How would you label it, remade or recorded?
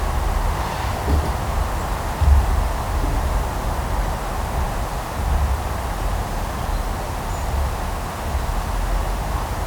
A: recorded